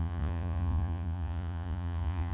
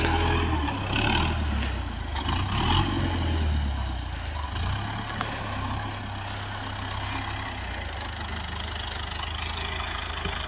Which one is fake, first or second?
first